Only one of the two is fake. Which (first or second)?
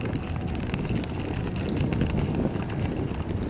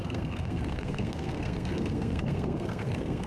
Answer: second